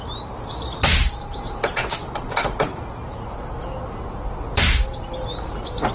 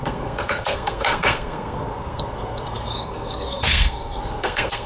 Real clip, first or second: first